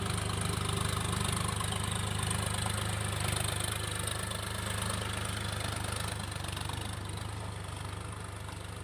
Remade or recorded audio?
recorded